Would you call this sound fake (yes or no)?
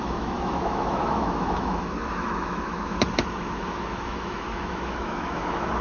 yes